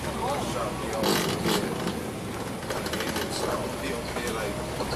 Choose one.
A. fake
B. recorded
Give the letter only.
B